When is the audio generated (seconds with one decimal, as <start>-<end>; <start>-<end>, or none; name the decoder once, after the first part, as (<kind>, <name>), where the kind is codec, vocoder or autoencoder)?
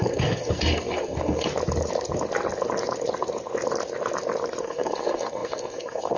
0.0-1.5 (codec, SNAC); 4.6-6.2